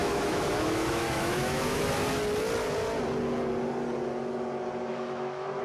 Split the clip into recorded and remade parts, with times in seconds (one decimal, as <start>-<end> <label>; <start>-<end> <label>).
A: 0.0-1.8 remade; 1.8-4.9 recorded; 4.9-5.6 remade